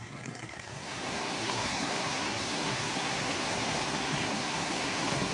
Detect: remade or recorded remade